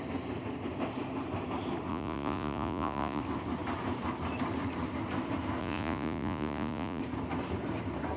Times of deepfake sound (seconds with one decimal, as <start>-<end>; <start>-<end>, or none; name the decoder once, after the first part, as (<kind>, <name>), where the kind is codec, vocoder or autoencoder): 1.9-3.2 (vocoder, Vocos); 5.6-7.0